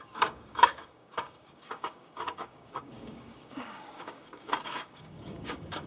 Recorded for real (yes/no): no